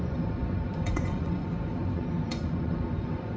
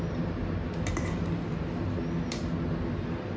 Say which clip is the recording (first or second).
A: second